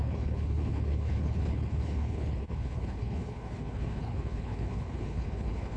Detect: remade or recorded remade